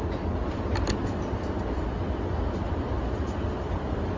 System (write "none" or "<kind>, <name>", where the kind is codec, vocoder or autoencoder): none